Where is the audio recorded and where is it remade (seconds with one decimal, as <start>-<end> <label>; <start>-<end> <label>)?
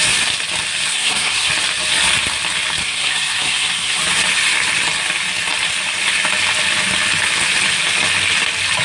0.0-0.9 recorded; 0.9-1.5 remade; 1.5-2.8 recorded; 2.8-4.0 remade; 4.0-8.8 recorded